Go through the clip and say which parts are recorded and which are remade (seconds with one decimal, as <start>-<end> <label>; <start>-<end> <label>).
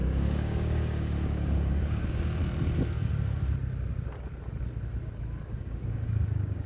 0.0-2.4 remade; 2.4-5.6 recorded; 5.6-6.7 remade